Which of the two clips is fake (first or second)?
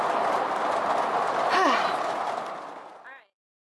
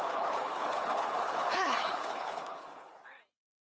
second